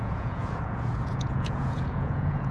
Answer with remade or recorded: remade